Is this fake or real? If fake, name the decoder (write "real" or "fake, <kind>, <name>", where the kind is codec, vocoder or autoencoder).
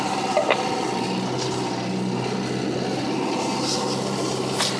real